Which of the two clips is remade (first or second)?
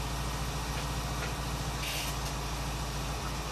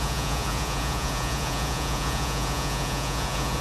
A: second